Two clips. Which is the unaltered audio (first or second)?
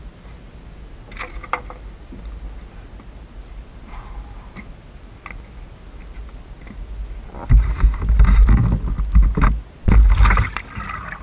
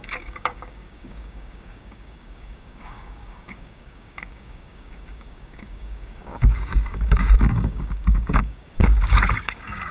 first